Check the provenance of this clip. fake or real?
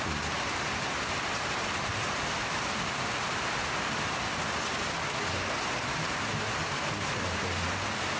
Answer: real